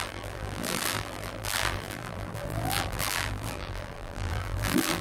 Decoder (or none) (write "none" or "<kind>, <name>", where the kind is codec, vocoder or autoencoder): vocoder, BigVGAN v2